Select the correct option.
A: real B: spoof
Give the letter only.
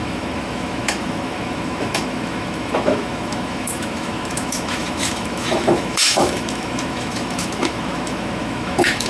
B